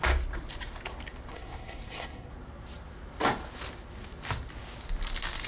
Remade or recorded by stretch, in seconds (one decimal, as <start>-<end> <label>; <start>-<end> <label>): 0.0-1.3 recorded; 1.3-2.3 remade; 2.3-5.5 recorded